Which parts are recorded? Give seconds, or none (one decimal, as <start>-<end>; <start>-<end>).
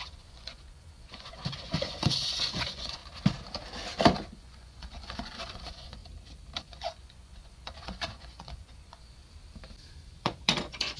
3.0-4.3; 6.0-6.6; 9.2-9.9